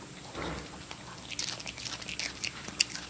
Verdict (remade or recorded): recorded